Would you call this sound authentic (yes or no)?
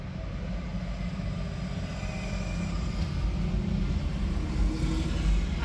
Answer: yes